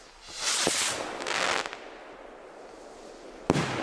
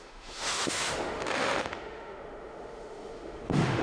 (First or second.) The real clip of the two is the first